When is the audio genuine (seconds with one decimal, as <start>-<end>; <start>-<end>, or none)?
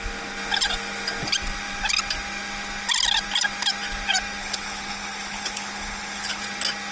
0.0-4.4; 6.4-6.9